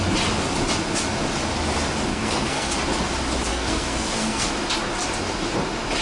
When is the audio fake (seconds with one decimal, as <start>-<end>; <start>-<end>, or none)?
2.1-2.7; 3.5-4.5